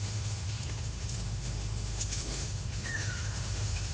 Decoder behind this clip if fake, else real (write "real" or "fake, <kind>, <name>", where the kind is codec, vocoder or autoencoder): fake, autoencoder, DAC-VAE